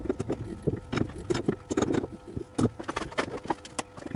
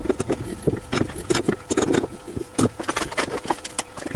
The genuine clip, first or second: first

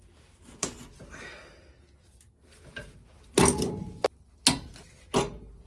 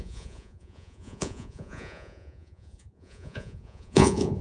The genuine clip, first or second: first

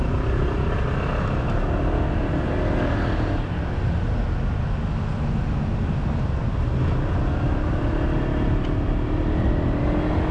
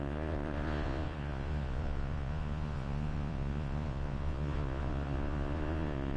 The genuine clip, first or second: first